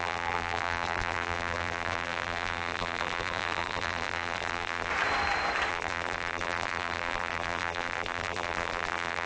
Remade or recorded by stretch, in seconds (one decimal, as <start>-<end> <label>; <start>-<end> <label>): 0.0-4.9 remade; 4.9-5.7 recorded; 5.7-9.3 remade